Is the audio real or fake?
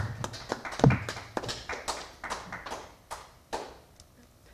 real